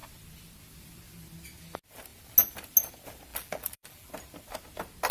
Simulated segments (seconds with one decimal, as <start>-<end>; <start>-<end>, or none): 3.3-4.1